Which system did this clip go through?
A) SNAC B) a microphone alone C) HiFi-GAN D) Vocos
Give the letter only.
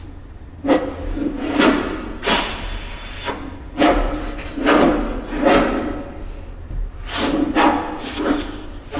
B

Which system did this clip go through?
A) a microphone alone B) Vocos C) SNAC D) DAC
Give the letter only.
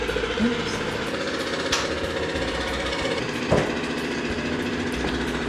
A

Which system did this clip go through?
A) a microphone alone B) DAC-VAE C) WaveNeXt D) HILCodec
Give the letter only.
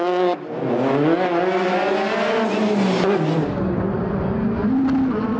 A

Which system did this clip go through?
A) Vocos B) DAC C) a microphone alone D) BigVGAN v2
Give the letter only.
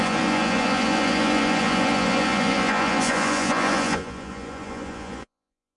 A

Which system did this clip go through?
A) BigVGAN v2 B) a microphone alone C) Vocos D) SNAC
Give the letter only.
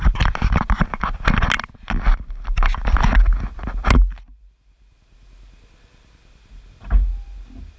B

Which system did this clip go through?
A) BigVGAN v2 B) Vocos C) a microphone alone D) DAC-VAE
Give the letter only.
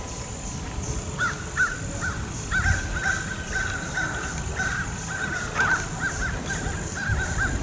C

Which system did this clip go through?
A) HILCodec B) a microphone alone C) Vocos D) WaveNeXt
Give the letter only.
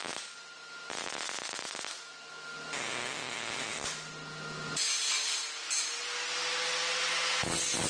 B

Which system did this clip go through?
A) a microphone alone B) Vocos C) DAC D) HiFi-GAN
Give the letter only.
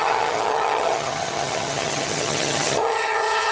D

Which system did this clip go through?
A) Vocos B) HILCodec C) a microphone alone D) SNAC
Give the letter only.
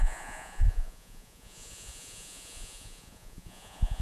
A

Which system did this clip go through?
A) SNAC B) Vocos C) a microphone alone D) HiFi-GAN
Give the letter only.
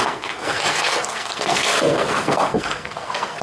A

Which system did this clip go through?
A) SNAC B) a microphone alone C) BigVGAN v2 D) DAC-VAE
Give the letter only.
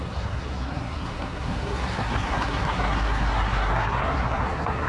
A